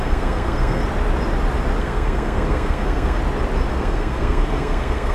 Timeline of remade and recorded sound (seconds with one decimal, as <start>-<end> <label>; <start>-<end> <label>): 0.0-0.8 remade; 0.8-1.8 recorded; 1.8-3.2 remade; 3.2-3.7 recorded; 3.7-5.1 remade